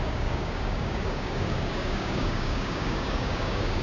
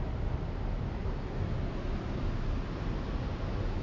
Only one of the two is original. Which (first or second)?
second